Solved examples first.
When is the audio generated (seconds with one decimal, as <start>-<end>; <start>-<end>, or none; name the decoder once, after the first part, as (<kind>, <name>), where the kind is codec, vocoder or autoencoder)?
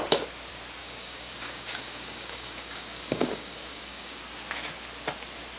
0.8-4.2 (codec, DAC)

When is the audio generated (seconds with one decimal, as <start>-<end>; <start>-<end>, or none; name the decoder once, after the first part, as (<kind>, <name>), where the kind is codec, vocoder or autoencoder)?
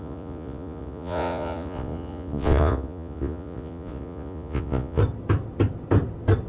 0.0-5.0 (vocoder, Vocos)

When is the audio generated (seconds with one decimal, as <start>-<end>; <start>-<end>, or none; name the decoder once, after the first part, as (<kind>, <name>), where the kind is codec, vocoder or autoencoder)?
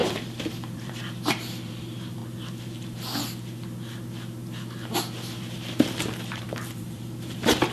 0.0-2.2 (vocoder, BigVGAN v2); 6.8-7.7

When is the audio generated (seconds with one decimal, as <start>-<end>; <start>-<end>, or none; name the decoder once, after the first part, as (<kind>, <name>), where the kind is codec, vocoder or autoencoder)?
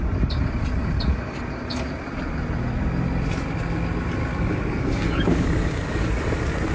4.3-6.2 (codec, DAC)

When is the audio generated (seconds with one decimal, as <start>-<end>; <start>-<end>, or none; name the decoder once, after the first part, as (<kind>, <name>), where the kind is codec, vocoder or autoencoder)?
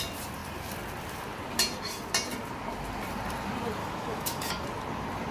3.8-4.5 (autoencoder, DAC-VAE)